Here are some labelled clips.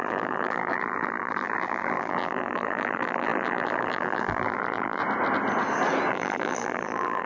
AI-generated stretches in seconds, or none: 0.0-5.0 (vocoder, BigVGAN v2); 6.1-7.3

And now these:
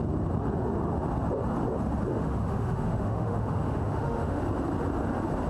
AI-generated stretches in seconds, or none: 2.1-4.4 (autoencoder, DAC-VAE)